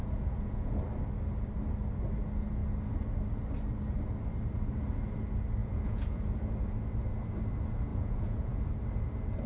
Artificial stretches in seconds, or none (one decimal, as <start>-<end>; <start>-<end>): 0.0-0.8; 5.6-6.3; 7.9-8.6